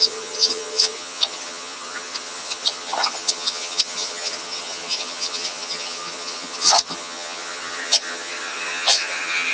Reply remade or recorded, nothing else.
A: remade